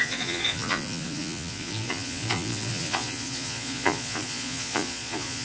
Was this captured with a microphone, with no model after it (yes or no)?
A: no